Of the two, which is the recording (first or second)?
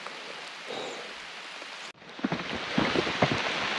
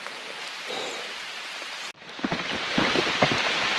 first